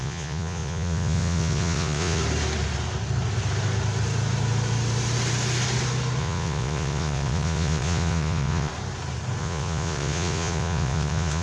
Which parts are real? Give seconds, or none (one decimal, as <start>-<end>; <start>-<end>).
2.2-6.2; 8.7-9.4